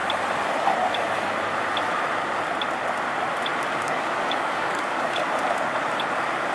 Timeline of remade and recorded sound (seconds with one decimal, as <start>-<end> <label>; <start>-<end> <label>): 0.0-3.8 recorded; 3.8-5.3 remade; 5.3-6.5 recorded